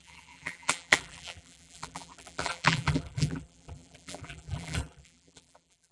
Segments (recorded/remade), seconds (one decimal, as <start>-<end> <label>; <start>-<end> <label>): 0.0-5.9 remade